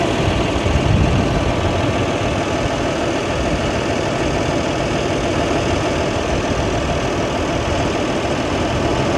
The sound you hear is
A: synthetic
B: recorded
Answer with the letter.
B